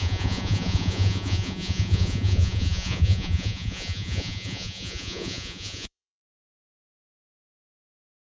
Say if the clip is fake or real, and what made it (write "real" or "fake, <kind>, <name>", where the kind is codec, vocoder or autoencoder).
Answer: fake, vocoder, Vocos